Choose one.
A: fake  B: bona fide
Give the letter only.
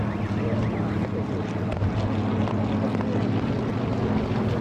B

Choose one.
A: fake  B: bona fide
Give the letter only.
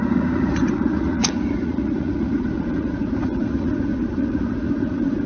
A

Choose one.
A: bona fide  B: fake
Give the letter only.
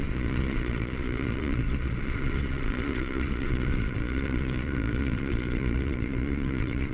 B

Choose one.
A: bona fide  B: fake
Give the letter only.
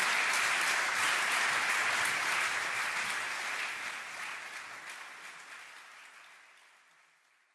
A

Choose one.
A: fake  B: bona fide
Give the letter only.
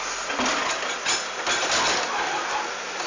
B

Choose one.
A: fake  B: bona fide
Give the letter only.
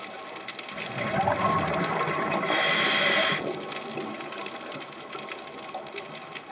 B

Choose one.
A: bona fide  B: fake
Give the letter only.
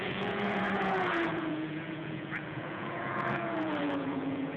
B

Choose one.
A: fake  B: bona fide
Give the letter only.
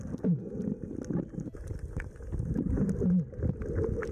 B